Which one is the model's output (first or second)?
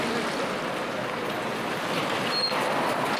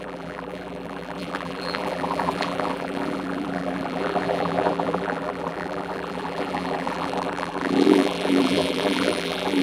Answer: second